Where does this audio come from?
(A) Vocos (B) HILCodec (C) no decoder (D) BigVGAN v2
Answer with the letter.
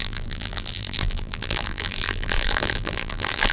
D